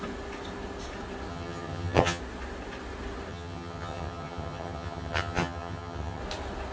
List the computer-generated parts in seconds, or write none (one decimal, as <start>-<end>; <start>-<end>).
1.3-2.2; 3.3-6.2

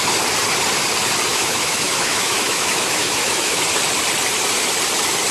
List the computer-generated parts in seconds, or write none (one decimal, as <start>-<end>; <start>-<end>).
1.3-3.6

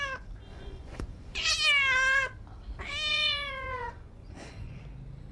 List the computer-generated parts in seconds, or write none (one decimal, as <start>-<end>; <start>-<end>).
0.5-1.5; 3.1-4.8